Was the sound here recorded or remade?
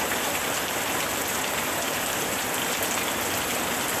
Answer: remade